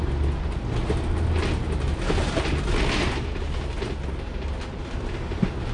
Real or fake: real